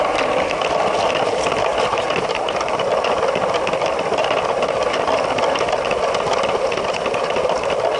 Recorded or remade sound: recorded